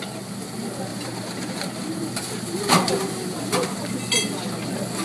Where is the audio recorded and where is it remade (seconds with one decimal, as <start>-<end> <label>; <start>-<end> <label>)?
0.0-0.9 recorded; 0.9-3.9 remade; 3.9-5.0 recorded